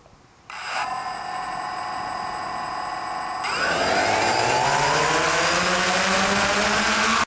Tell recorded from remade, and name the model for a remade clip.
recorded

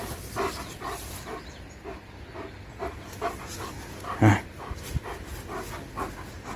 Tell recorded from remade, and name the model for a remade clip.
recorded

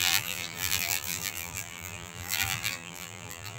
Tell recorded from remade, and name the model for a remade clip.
remade, vocoder, BigVGAN v2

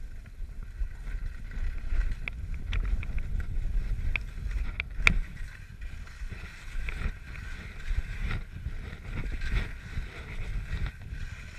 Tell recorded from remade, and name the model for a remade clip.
recorded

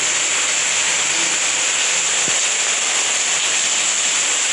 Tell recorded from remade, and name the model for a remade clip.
recorded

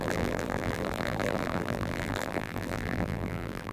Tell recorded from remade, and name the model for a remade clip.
remade, vocoder, BigVGAN v2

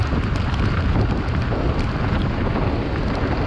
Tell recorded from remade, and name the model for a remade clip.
recorded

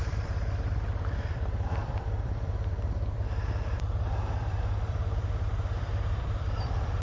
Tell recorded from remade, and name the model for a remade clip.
remade, vocoder, BigVGAN v2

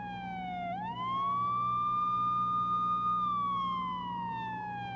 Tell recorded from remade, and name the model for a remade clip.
recorded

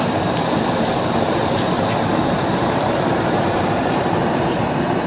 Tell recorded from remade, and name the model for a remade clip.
remade, vocoder, BigVGAN v2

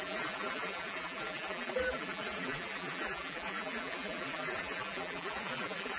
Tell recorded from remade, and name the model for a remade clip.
remade, vocoder, BigVGAN v2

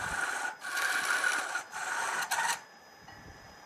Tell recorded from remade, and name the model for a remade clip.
recorded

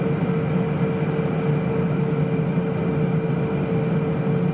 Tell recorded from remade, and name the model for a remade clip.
recorded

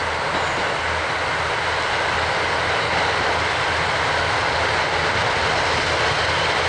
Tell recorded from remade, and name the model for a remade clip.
recorded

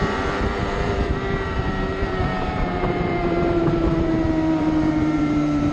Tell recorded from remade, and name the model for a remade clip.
remade, vocoder, BigVGAN v2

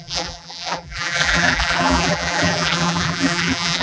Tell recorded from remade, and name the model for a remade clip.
remade, vocoder, BigVGAN v2